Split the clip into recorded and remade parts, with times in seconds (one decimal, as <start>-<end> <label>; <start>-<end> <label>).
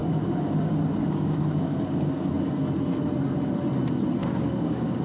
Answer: 0.0-0.6 remade; 0.6-1.0 recorded; 1.0-2.3 remade; 2.3-4.2 recorded; 4.2-5.0 remade